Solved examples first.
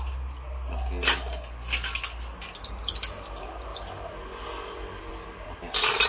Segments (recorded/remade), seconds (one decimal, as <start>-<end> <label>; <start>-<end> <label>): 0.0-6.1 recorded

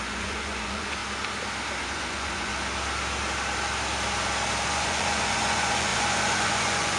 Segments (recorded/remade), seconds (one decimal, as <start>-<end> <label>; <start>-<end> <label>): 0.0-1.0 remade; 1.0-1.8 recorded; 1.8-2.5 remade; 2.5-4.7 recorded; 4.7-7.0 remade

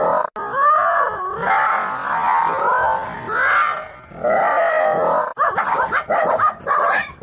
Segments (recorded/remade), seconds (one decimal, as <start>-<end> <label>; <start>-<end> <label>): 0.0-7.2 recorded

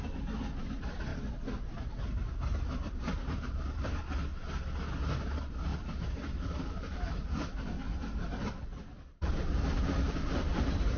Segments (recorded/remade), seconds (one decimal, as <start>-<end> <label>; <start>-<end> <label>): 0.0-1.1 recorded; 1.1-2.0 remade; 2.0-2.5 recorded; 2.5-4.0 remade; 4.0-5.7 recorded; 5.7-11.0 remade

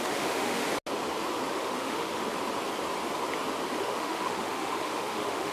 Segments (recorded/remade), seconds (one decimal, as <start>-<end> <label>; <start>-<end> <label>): 0.0-0.6 remade; 0.6-1.5 recorded; 1.5-2.2 remade; 2.2-3.8 recorded; 3.8-5.5 remade

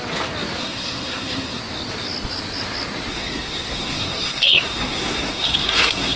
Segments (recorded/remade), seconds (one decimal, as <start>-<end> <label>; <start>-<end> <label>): 0.0-0.6 recorded; 0.6-1.6 remade; 1.6-3.1 recorded; 3.1-6.2 remade

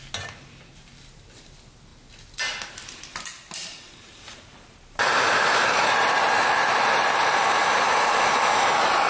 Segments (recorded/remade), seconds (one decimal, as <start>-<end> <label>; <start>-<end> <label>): 0.0-3.6 recorded; 3.6-8.3 remade; 8.3-9.1 recorded